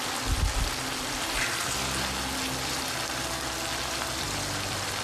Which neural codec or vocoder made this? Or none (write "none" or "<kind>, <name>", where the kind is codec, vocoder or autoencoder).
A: none